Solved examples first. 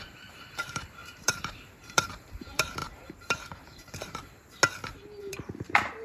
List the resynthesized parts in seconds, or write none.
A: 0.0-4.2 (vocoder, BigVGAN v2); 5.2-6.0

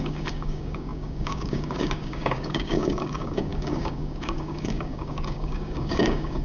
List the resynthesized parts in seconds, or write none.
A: 0.0-6.4 (codec, DAC)

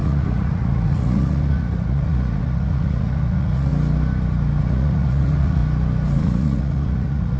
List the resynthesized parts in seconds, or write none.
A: 0.0-3.7 (vocoder, Vocos); 4.6-5.6; 6.2-7.4

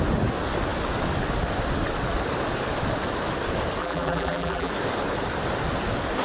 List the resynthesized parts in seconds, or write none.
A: 3.8-4.7 (vocoder, BigVGAN v2)